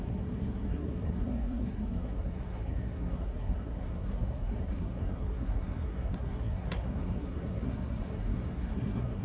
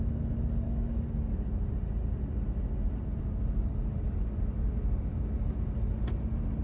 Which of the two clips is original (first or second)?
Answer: second